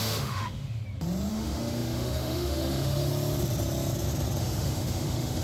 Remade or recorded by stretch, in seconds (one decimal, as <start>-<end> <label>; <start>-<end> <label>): 0.0-0.8 remade; 0.8-1.3 recorded; 1.3-3.1 remade; 3.1-4.4 recorded; 4.4-5.4 remade